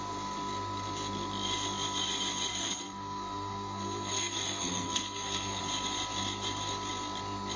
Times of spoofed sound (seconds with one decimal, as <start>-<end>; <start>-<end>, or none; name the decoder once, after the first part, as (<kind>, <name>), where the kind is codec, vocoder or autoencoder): 2.5-5.6 (codec, SNAC)